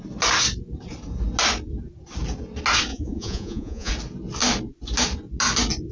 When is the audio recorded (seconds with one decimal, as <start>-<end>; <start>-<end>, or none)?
0.0-2.9; 3.9-5.9